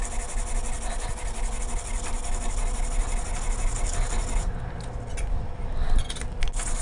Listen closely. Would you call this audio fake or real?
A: real